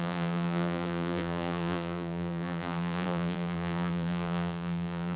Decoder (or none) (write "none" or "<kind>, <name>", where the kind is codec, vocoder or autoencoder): vocoder, BigVGAN v2